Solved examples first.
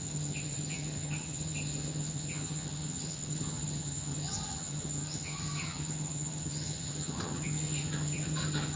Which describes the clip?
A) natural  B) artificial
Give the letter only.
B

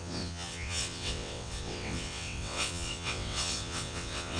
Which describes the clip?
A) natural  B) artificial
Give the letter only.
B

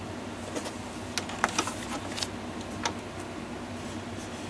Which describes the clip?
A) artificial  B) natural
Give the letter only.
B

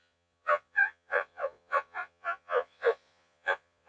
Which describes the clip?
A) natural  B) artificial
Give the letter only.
B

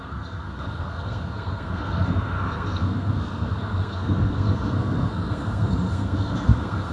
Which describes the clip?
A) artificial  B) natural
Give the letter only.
A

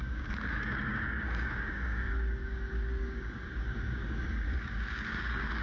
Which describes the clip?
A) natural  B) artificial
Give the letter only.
B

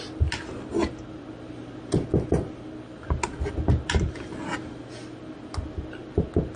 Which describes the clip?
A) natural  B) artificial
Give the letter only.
A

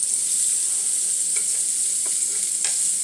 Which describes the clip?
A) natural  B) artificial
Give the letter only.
A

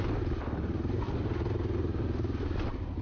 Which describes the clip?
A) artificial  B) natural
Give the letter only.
B